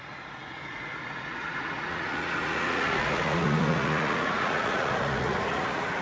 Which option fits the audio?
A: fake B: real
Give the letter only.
A